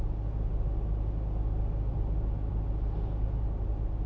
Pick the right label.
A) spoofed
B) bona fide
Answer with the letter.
B